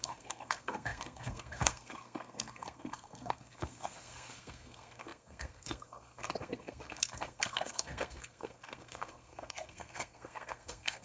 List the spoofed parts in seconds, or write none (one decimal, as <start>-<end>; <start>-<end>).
0.0-11.0